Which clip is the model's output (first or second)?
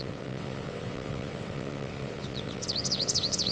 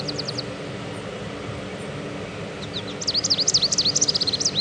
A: first